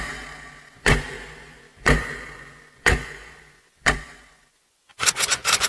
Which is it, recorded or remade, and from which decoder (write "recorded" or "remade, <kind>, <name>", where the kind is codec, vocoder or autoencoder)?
remade, vocoder, Vocos